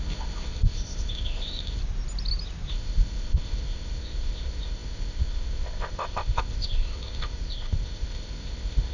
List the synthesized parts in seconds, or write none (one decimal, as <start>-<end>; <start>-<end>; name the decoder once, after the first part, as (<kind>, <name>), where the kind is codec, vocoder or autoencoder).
0.0-1.8 (codec, ZipCodec); 2.7-8.9